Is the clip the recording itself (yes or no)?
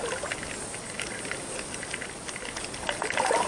yes